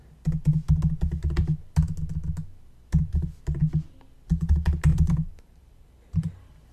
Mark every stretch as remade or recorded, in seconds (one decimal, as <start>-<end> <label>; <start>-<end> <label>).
0.0-4.9 recorded; 4.9-6.3 remade; 6.3-6.7 recorded